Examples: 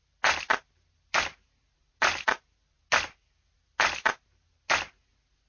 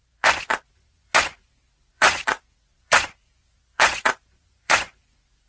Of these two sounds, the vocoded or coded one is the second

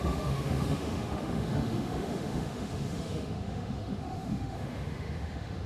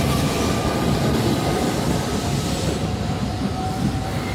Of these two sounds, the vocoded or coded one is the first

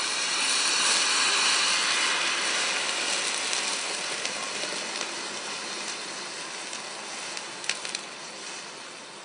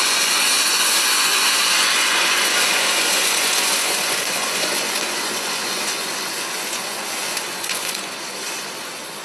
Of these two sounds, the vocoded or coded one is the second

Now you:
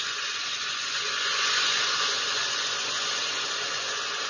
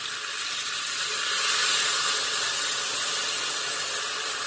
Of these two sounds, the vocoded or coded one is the first